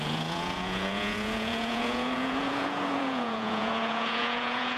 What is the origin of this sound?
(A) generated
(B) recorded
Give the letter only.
A